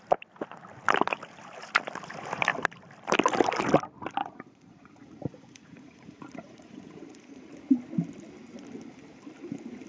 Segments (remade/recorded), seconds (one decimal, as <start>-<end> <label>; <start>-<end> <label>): 0.0-4.2 recorded; 4.2-7.6 remade; 7.6-9.9 recorded